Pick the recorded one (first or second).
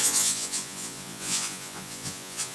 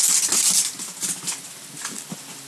second